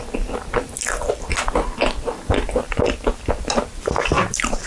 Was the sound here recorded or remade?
recorded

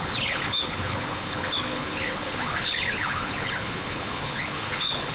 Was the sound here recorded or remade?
remade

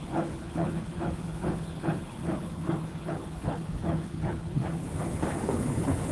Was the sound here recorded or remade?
remade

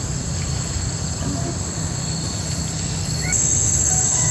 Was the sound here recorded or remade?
recorded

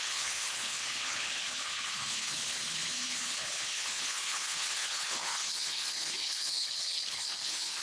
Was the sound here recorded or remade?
remade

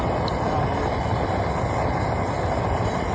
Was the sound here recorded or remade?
recorded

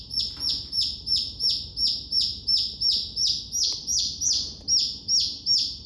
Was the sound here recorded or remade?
recorded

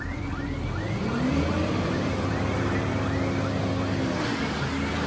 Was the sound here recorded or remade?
recorded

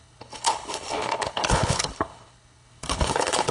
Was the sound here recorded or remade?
remade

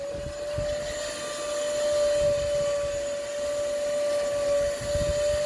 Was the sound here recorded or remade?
recorded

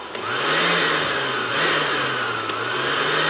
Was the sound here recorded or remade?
recorded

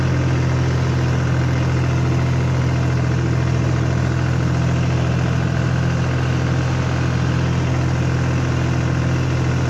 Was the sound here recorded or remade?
recorded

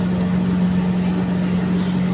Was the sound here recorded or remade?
recorded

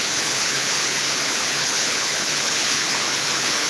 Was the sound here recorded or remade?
remade